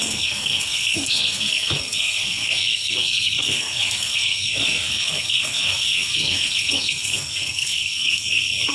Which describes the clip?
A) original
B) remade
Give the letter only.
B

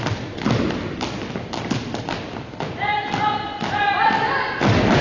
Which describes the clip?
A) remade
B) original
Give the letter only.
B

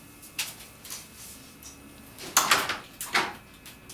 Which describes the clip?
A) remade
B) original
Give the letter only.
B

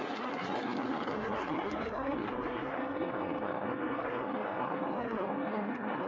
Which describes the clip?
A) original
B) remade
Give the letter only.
B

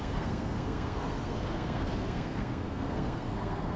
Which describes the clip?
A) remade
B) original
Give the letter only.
A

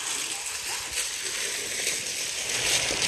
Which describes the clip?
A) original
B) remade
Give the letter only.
A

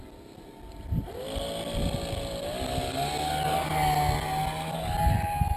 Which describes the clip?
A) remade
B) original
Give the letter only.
B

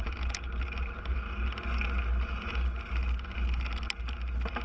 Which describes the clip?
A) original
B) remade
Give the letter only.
A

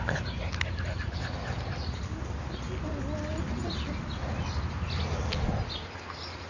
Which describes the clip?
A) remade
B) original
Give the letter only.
B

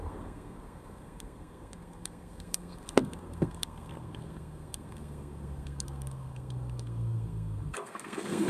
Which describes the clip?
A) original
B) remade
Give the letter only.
B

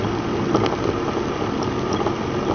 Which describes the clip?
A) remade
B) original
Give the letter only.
B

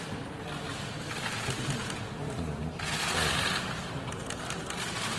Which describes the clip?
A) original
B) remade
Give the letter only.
A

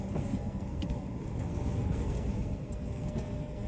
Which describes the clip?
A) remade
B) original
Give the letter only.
A